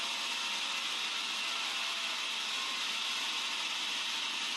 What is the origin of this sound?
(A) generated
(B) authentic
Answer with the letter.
B